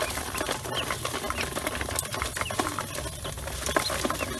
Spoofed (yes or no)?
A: no